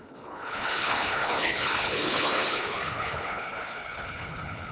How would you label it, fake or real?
fake